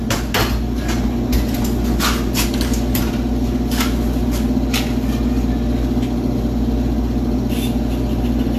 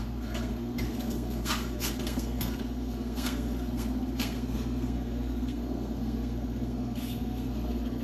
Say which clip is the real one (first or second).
first